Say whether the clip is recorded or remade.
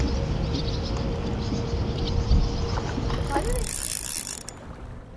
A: recorded